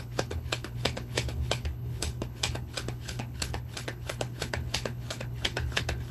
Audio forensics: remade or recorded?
remade